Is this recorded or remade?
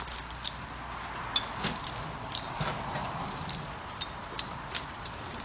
recorded